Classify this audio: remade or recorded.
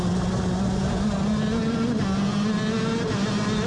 recorded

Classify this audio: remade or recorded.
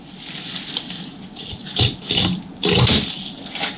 recorded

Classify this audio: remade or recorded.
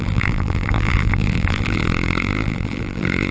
remade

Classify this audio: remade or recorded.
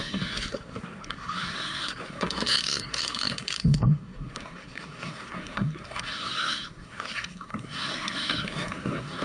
remade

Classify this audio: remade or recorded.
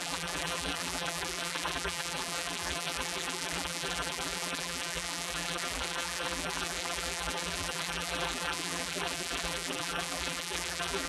remade